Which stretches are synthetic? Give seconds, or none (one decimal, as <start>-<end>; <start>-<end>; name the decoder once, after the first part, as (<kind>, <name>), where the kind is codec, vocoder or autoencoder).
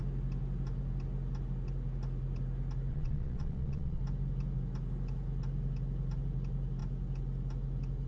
2.9-4.0 (vocoder, Vocos)